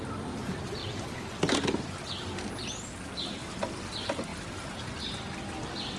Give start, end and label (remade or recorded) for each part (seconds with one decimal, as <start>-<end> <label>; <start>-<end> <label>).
0.0-6.0 recorded